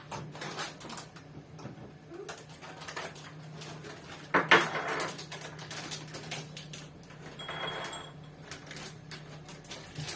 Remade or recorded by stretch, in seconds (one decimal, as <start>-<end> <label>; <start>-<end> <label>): 0.0-10.2 recorded